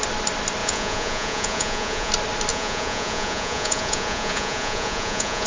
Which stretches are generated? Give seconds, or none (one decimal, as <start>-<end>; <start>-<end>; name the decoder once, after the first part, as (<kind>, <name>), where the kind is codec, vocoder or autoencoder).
0.6-2.1 (vocoder, Vocos); 2.5-5.5